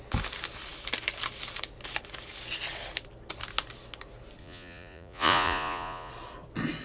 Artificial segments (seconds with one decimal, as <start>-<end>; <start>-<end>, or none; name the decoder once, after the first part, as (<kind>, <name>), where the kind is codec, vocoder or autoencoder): 4.4-6.1 (vocoder, Vocos)